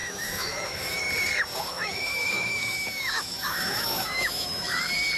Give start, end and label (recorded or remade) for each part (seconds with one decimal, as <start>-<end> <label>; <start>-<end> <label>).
0.0-1.0 remade; 1.0-1.7 recorded; 1.7-4.8 remade; 4.8-5.2 recorded